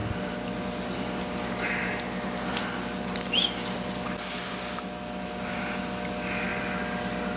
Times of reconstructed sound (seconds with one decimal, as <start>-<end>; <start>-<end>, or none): none